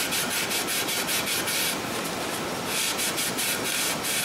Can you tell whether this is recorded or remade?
recorded